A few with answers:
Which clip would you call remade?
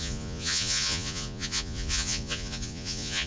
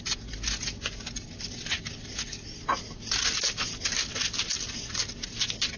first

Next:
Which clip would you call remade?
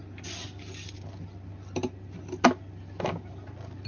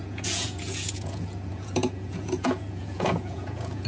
second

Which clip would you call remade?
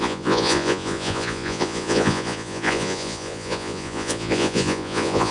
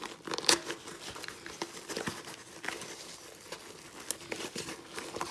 first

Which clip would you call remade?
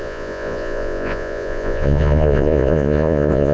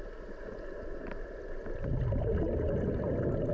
first